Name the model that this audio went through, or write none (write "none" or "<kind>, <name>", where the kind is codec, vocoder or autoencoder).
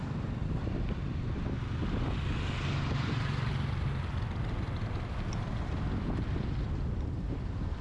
none